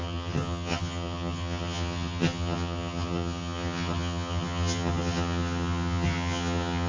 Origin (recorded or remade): remade